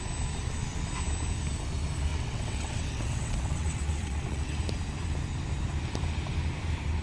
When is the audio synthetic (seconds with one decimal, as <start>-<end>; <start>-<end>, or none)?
2.1-4.6

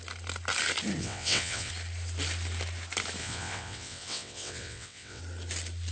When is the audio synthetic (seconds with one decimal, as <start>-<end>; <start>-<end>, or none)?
1.0-1.7; 3.2-5.2

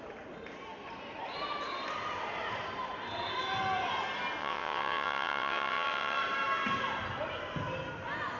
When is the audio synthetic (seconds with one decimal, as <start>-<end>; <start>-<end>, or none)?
4.4-6.2

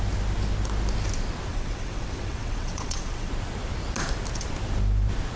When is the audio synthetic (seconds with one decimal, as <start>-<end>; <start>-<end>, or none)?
1.5-3.3

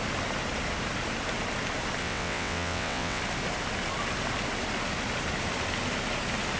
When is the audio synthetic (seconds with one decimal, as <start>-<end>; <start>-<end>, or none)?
2.0-3.2

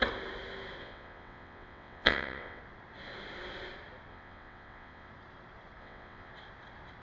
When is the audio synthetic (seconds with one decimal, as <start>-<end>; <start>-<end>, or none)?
0.8-2.6; 4.1-5.1; 5.8-6.3

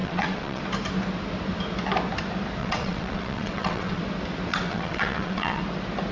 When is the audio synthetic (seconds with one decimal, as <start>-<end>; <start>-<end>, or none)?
0.0-0.6; 2.6-4.0; 4.5-5.6